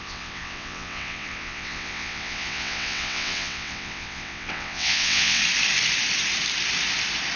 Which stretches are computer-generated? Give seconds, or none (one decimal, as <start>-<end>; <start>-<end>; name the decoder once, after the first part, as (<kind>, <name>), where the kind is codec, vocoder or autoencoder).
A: 0.0-5.4 (vocoder, WaveNeXt)